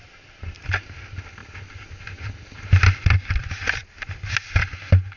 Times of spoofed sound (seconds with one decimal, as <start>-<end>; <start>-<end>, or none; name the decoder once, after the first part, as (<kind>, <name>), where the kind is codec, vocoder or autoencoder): 0.0-1.4 (vocoder, BigVGAN v2); 2.8-3.8